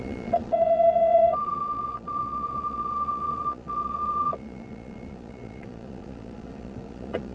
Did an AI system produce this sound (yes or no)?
yes